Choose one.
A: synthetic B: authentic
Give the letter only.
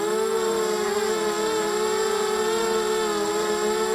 B